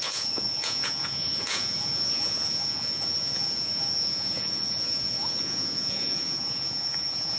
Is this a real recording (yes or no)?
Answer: no